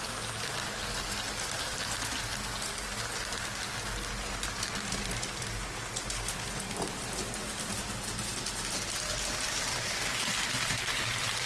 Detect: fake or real real